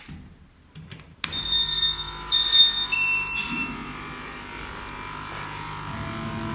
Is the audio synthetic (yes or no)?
no